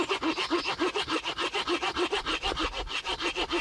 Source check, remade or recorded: recorded